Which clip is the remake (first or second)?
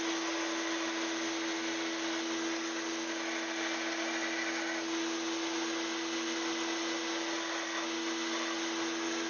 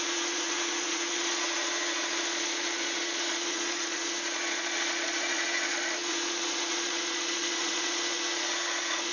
second